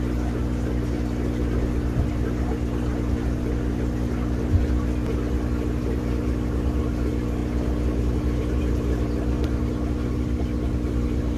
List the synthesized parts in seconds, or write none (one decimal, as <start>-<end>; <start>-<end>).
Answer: none